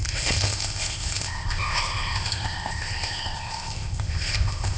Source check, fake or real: fake